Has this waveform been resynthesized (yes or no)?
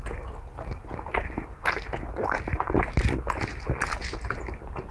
no